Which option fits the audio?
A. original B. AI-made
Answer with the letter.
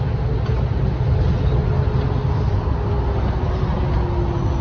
A